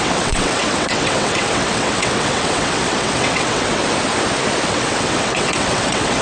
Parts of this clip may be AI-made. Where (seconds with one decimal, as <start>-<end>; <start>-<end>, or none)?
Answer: 0.0-3.8; 4.7-6.2